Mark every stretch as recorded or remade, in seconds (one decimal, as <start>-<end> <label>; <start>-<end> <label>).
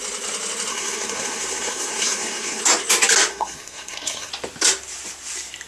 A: 0.0-0.7 recorded; 0.7-2.6 remade; 2.6-3.3 recorded; 3.3-4.3 remade; 4.3-5.7 recorded